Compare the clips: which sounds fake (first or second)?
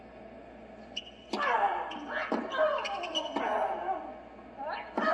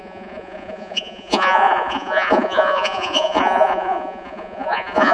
second